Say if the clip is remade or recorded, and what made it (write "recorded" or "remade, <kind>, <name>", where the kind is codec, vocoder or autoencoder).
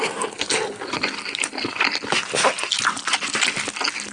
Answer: recorded